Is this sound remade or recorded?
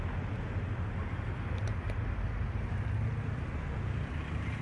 recorded